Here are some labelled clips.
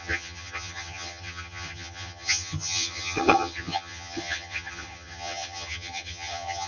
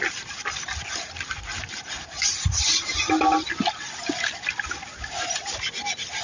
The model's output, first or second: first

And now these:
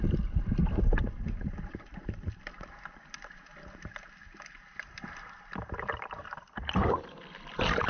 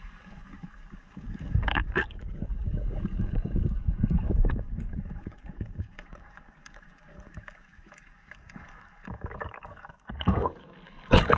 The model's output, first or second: second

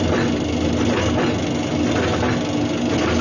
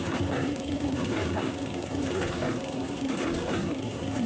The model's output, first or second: second